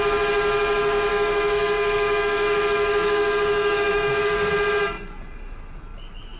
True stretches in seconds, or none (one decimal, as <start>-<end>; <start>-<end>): 0.0-1.1; 4.5-6.4